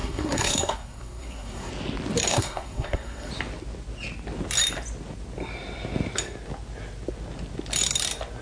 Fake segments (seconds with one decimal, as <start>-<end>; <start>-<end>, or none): 0.0-1.7; 2.3-3.3

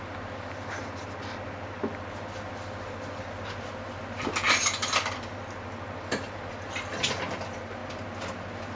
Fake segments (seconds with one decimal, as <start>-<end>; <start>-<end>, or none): none

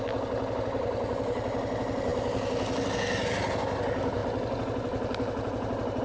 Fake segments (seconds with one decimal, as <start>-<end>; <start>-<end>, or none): none